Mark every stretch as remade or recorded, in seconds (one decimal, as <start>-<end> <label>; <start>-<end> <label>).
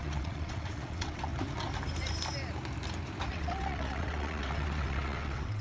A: 0.0-1.3 remade; 1.3-3.3 recorded; 3.3-5.6 remade